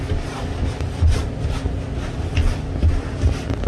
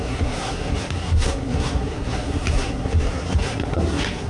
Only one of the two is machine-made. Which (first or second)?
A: second